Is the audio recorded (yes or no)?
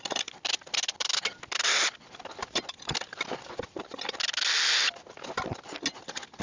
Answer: yes